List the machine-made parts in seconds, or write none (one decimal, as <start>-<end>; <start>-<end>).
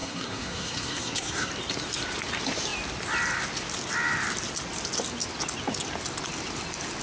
0.0-1.5